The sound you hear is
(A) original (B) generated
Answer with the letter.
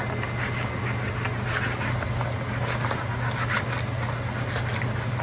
A